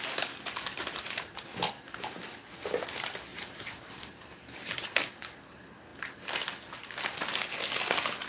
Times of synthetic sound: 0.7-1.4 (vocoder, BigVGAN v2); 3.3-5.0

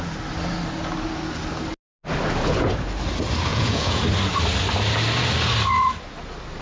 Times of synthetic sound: 3.5-4.0 (vocoder, Vocos)

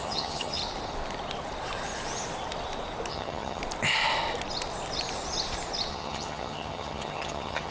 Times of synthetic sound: 0.0-0.6 (vocoder, HiFi-GAN); 3.1-3.6; 5.9-7.7

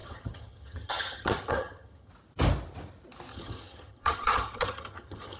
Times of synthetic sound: 0.0-2.1 (vocoder, HiFi-GAN); 3.3-5.4

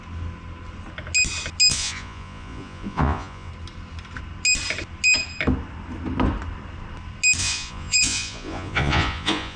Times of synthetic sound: 1.7-3.5 (vocoder, Vocos); 7.4-9.6

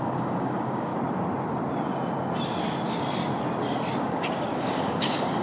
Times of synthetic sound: 0.0-0.9 (codec, DAC); 4.0-5.4

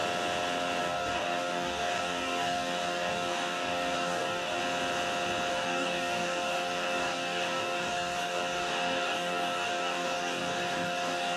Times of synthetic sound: 0.8-4.6 (codec, DAC); 5.5-11.4